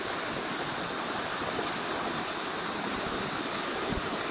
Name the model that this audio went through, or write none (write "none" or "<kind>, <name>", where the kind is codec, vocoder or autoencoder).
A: none